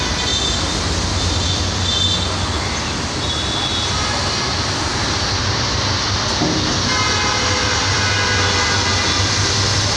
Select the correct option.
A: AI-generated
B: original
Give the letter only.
B